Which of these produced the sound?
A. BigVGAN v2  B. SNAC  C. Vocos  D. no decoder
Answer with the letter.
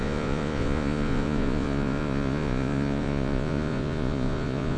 C